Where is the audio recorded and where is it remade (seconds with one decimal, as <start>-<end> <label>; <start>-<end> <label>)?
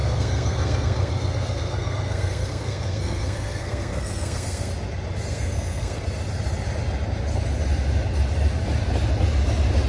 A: 0.0-4.7 remade; 4.7-5.3 recorded; 5.3-6.0 remade; 6.0-9.9 recorded